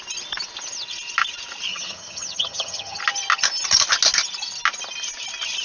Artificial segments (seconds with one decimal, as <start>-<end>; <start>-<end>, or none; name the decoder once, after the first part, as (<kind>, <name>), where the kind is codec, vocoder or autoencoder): 1.7-3.0 (vocoder, HiFi-GAN)